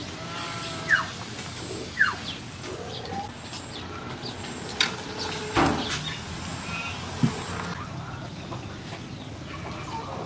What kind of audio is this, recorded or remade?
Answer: recorded